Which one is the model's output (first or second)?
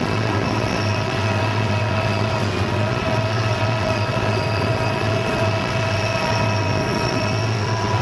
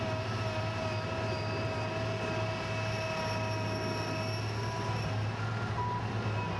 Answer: first